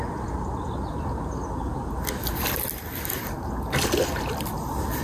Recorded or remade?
recorded